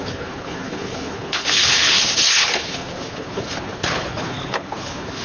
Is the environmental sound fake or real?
fake